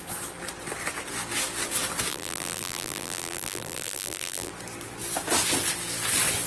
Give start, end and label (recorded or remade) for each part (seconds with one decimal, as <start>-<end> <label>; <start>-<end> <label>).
0.0-2.1 recorded; 2.1-4.5 remade; 4.5-6.5 recorded